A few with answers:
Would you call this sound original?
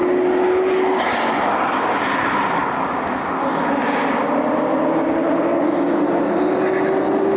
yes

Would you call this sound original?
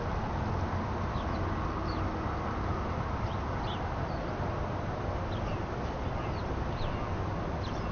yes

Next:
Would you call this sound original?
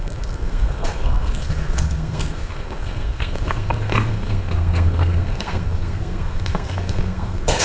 no